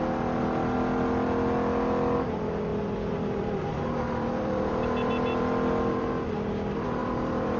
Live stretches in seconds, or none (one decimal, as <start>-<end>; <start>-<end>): 0.0-2.7; 6.1-7.0